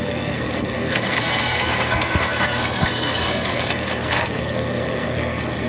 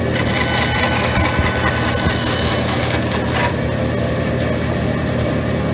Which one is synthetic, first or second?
first